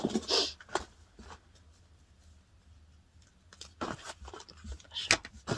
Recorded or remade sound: recorded